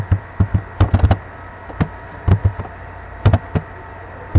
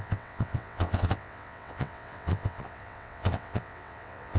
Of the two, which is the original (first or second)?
first